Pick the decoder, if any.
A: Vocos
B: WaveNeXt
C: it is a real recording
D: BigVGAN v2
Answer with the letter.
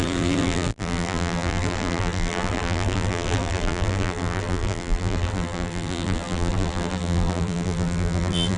D